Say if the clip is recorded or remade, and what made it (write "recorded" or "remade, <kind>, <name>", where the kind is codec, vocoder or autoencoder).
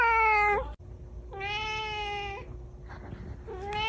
recorded